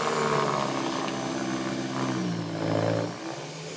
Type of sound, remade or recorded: recorded